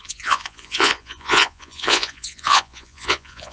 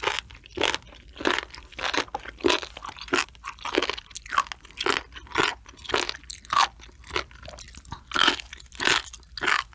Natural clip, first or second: second